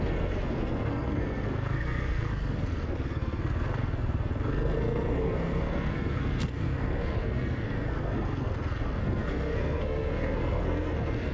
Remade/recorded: remade